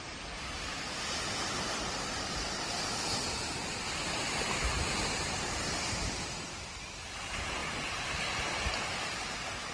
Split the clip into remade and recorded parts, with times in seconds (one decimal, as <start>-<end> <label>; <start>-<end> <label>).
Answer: 0.0-9.7 recorded